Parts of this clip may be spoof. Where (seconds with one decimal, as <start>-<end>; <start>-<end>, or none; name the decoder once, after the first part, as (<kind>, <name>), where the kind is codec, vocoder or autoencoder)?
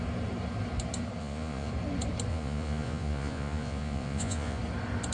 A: 1.2-1.7 (vocoder, Vocos); 2.3-4.6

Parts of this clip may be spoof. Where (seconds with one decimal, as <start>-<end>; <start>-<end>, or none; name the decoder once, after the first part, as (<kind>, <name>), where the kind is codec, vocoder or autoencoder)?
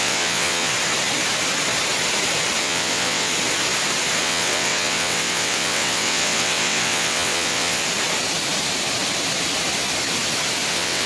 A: 0.0-0.7 (vocoder, WaveNeXt); 2.6-3.3; 4.2-7.8; 10.7-11.1